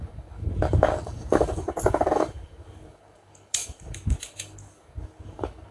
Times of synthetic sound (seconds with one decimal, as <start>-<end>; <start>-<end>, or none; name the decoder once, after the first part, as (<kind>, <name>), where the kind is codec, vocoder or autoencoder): 0.0-5.7 (codec, DAC)